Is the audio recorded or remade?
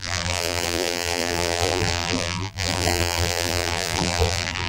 remade